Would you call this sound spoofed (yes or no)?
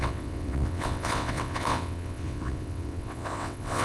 yes